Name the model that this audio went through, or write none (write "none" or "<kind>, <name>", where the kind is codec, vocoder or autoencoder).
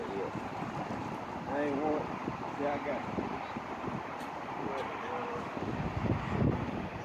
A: none